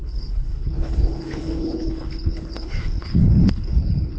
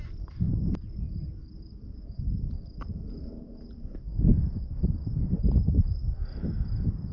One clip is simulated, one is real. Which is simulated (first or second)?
first